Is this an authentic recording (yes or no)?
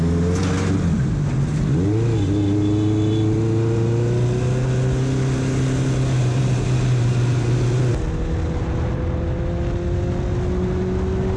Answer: yes